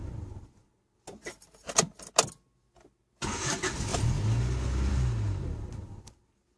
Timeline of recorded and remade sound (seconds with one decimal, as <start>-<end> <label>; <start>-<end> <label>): 0.0-6.6 recorded